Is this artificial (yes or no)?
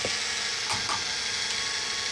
no